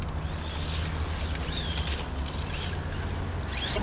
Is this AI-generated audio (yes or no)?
no